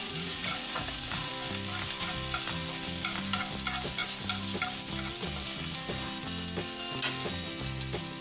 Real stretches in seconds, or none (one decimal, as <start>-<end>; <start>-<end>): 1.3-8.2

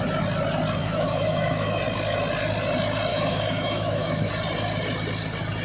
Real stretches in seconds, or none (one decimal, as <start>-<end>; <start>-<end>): 0.0-0.8; 1.8-3.1; 4.3-5.6

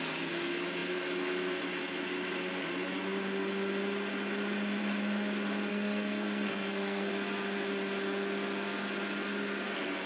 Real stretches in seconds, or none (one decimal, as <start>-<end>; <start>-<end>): 0.0-5.7; 7.1-10.1

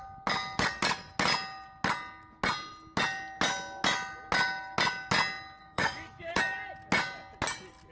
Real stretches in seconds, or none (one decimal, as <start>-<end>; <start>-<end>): 0.0-5.6; 6.4-7.9